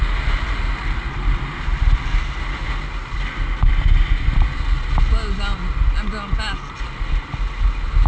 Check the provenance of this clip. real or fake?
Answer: real